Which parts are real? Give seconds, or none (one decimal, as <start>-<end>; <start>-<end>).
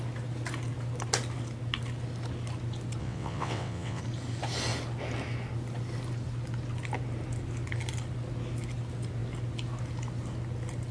0.0-3.0; 4.0-10.9